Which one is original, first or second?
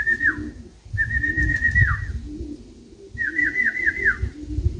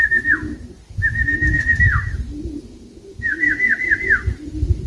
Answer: first